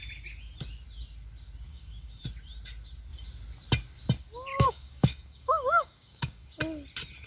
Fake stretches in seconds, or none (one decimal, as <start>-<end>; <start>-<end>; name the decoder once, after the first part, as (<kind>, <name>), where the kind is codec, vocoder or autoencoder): 1.7-2.2 (codec, DAC); 4.5-6.5